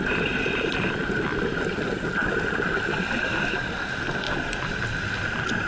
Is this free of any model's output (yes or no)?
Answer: yes